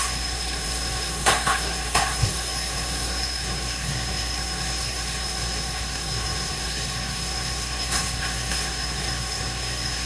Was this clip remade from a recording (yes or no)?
yes